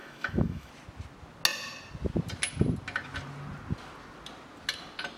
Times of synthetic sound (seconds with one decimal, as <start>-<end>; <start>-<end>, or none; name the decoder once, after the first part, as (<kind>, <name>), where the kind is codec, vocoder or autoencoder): 0.0-0.7 (autoencoder, DAC-VAE)